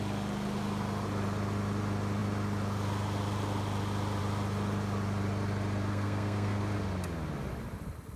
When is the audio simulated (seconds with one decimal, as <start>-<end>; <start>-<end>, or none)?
5.9-6.6